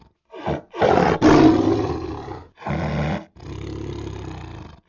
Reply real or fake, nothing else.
real